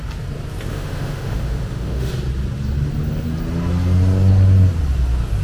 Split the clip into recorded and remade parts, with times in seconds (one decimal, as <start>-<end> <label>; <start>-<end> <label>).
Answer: 0.0-0.7 recorded; 0.7-2.1 remade; 2.1-5.4 recorded

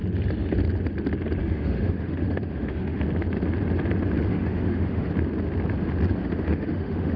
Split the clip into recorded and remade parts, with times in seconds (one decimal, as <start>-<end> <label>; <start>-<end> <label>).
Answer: 0.0-1.4 recorded; 1.4-3.0 remade; 3.0-4.3 recorded; 4.3-5.1 remade; 5.1-6.2 recorded; 6.2-7.2 remade